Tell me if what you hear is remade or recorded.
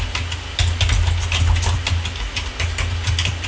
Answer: recorded